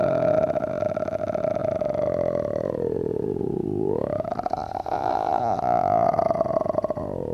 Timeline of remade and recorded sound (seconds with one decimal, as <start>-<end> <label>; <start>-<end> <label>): 0.0-1.6 recorded; 1.6-5.4 remade; 5.4-7.3 recorded